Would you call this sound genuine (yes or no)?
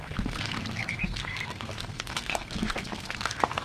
no